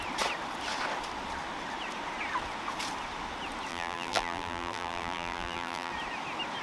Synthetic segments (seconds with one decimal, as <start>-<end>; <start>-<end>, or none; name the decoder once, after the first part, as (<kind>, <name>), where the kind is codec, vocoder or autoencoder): 3.7-5.9 (vocoder, BigVGAN v2)